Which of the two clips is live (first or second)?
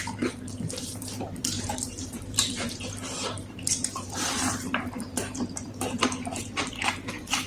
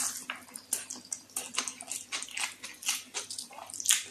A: second